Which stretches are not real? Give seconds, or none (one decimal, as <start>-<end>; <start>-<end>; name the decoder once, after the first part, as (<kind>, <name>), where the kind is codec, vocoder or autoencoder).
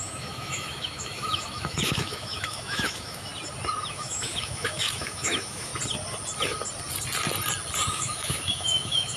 0.0-3.3 (autoencoder, DAC-VAE); 3.9-5.7; 7.9-9.2